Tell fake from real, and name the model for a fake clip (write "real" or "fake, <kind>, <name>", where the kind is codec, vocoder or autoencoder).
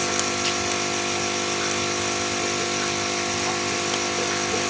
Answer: real